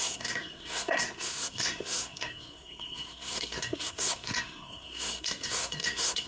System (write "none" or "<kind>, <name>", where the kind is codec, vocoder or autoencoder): codec, SNAC